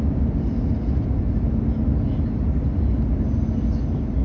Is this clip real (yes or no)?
yes